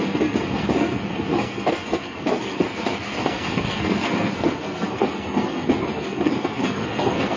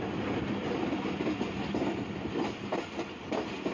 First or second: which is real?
second